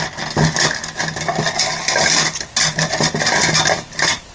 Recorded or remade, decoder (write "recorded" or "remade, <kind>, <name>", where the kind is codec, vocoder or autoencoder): recorded